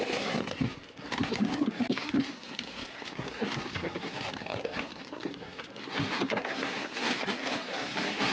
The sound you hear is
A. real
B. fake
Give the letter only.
B